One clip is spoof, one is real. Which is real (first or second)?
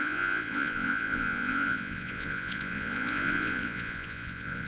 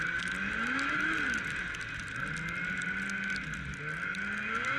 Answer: second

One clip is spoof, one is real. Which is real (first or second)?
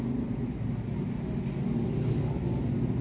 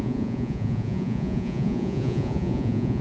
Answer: first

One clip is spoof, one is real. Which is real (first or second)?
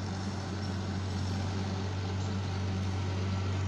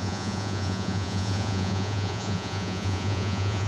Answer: first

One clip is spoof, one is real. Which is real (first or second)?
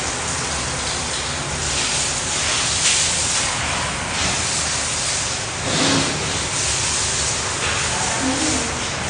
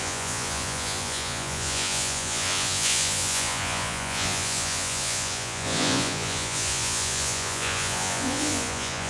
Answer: first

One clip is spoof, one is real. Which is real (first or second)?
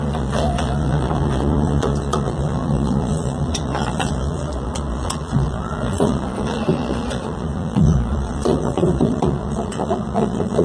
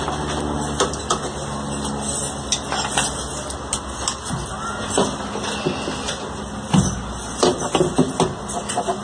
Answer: second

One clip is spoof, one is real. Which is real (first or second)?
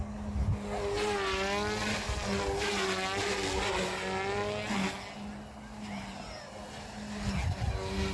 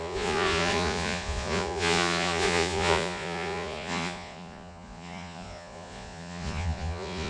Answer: first